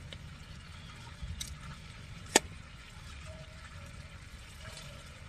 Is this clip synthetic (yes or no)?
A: yes